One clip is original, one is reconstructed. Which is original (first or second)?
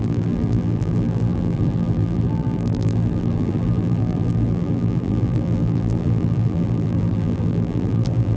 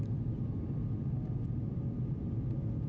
second